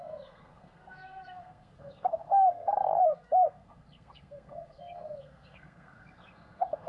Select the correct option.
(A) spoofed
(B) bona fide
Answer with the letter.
A